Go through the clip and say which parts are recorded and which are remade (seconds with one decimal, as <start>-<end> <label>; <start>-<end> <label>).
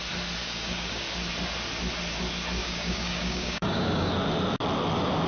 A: 0.0-0.4 recorded; 0.4-1.0 remade; 1.0-2.6 recorded; 2.6-4.1 remade; 4.1-5.3 recorded